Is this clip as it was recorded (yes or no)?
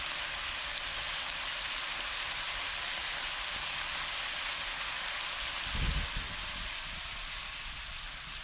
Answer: yes